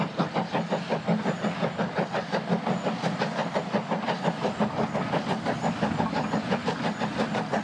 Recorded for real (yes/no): yes